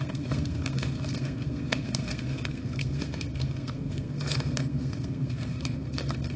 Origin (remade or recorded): remade